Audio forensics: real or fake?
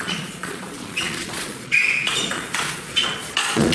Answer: fake